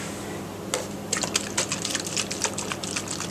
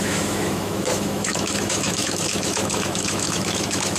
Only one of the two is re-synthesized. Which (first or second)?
second